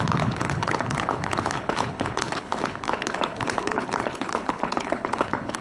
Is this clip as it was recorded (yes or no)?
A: no